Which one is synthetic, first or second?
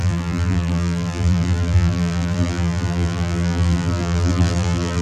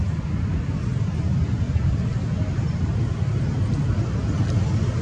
first